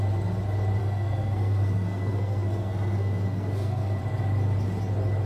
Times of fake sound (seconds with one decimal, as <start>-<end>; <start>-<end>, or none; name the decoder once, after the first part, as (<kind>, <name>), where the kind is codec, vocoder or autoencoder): 0.8-4.0 (codec, SNAC)